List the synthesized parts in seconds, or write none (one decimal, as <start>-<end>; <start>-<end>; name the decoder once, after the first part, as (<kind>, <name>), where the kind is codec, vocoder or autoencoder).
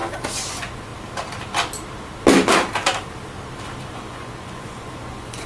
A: 0.5-0.9 (vocoder, Vocos); 3.9-5.5